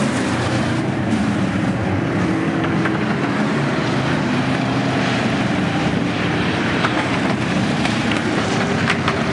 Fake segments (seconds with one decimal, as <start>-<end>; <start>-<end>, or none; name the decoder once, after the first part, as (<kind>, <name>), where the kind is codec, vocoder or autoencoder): 0.0-1.8 (vocoder, BigVGAN v2); 3.5-9.3